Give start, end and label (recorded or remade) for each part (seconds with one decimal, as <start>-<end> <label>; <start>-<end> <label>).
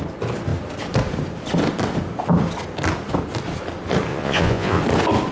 0.0-4.1 recorded; 4.1-4.8 remade; 4.8-5.3 recorded